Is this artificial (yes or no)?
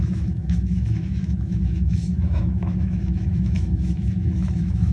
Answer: yes